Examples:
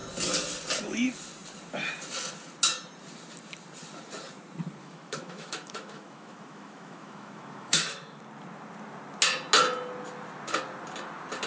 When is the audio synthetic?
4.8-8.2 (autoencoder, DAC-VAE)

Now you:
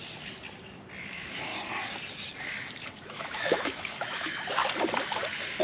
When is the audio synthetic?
1.0-1.5 (autoencoder, DAC-VAE); 2.7-4.6

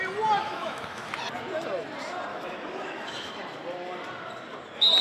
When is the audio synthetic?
0.4-1.1 (autoencoder, DAC-VAE); 2.3-3.4

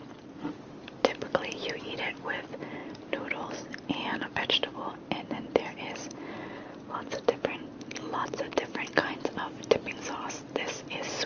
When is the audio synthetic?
none

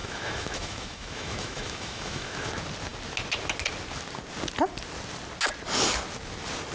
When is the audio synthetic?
0.0-2.5 (autoencoder, DAC-VAE)

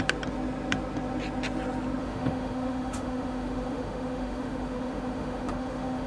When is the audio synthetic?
2.0-6.1 (autoencoder, DAC-VAE)